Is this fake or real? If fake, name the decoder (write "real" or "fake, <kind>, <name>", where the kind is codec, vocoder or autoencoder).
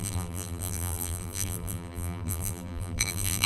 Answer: fake, vocoder, BigVGAN v2